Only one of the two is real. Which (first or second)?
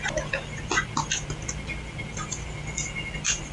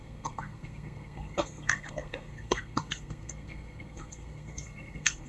first